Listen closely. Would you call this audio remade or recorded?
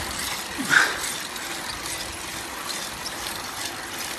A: recorded